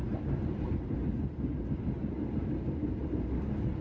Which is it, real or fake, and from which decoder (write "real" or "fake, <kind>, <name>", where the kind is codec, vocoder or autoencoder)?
real